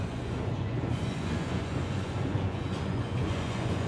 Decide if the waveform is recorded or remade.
remade